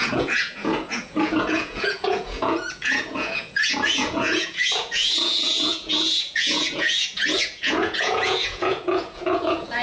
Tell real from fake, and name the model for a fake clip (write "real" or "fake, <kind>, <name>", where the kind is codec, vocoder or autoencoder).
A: fake, vocoder, Vocos